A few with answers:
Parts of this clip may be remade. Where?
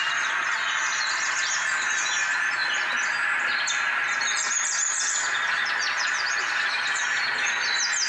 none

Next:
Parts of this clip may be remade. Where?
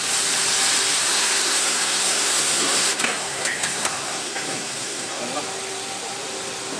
1.1-5.2 (codec, SNAC)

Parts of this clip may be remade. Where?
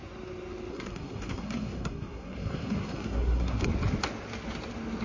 0.7-3.7 (codec, SNAC)